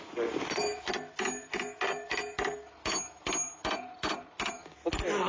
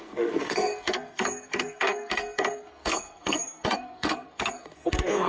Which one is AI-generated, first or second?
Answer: second